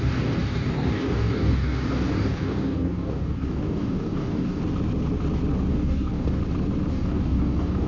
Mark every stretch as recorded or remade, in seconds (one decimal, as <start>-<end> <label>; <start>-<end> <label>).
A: 0.0-4.6 remade; 4.6-5.7 recorded; 5.7-6.4 remade; 6.4-6.9 recorded; 6.9-7.9 remade